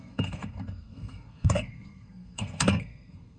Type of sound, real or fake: fake